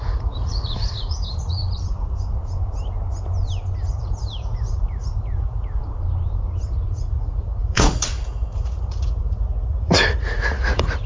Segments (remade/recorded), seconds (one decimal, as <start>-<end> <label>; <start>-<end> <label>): 0.0-1.6 remade; 1.6-3.9 recorded; 3.9-5.8 remade; 5.8-6.9 recorded; 6.9-11.1 remade